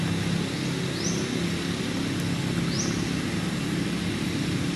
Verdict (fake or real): real